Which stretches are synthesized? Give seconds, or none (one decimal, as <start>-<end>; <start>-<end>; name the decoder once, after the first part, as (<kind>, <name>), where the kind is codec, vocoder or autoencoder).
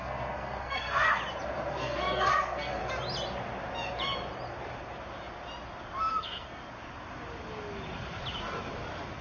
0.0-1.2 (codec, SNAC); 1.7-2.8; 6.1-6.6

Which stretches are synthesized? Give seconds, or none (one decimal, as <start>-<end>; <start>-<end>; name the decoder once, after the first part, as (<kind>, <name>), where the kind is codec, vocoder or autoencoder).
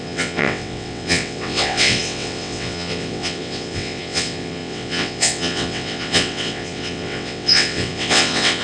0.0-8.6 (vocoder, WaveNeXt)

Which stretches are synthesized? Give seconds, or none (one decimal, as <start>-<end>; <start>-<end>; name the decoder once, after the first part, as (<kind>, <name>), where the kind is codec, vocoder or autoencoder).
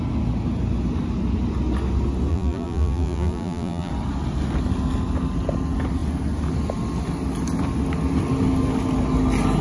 2.3-3.9 (vocoder, BigVGAN v2)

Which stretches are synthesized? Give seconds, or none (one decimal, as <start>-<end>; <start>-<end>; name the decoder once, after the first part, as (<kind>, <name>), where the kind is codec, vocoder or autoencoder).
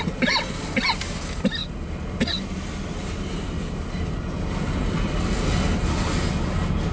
none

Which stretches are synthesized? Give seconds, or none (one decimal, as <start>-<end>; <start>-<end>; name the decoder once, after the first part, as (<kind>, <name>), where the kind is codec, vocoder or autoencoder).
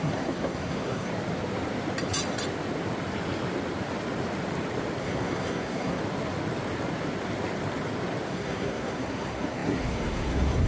0.0-1.1 (codec, SNAC); 5.0-6.0; 8.3-10.7